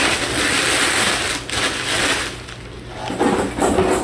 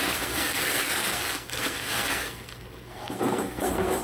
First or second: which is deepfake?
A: second